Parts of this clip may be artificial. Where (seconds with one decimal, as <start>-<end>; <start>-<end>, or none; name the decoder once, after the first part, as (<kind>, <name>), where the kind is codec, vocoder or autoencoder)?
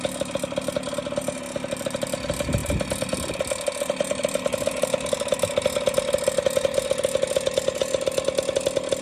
2.6-5.5 (vocoder, BigVGAN v2)